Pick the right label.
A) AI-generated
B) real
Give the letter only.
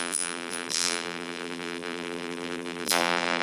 A